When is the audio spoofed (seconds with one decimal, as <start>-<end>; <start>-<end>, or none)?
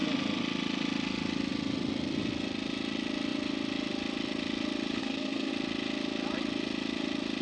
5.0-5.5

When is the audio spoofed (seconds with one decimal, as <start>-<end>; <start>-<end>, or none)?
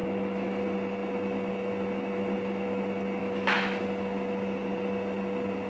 0.0-0.6; 3.2-3.8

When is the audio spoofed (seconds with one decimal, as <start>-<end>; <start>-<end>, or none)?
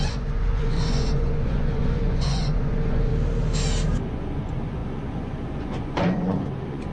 0.0-3.1; 4.1-6.9